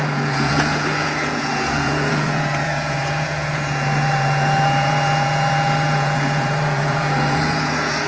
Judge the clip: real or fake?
fake